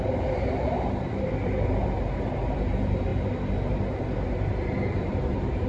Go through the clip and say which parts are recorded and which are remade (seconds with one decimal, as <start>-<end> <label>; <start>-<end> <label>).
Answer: 0.0-3.1 remade; 3.1-4.5 recorded; 4.5-5.7 remade